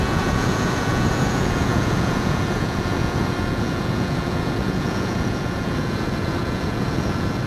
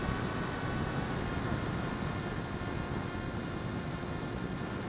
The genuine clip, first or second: second